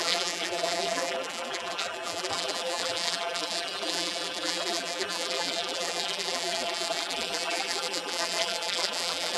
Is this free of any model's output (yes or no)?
no